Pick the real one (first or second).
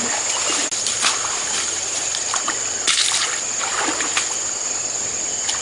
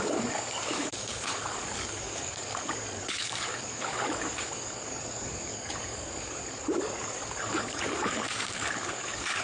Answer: first